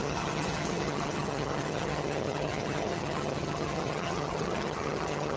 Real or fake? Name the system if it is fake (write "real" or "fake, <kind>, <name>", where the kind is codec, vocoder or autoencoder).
fake, vocoder, HiFi-GAN